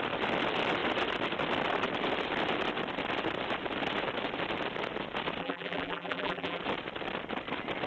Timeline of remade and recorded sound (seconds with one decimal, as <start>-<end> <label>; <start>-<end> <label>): 0.0-5.4 recorded; 5.4-6.6 remade; 6.6-7.9 recorded